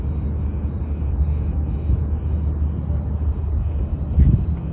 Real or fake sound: real